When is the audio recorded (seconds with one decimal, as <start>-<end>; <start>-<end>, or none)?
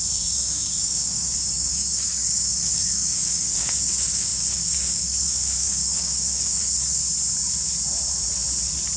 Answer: 7.0-9.0